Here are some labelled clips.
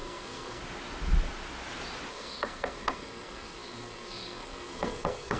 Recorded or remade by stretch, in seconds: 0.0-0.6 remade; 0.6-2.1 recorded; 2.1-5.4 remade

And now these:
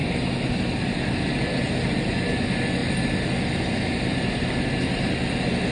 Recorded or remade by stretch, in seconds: 0.0-5.7 recorded

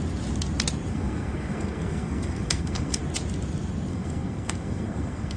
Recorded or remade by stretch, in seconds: 0.0-0.9 recorded; 0.9-3.0 remade; 3.0-3.9 recorded; 3.9-5.4 remade

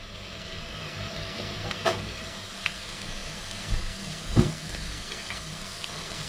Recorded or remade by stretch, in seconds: 0.0-6.3 remade